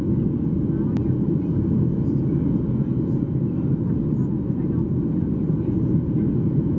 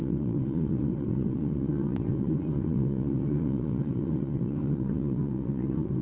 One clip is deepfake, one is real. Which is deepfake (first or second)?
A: second